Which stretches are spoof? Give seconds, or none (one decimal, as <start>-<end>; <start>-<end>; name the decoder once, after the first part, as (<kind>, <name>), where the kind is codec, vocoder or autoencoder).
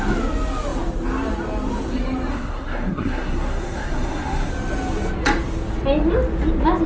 2.3-4.5 (codec, SNAC)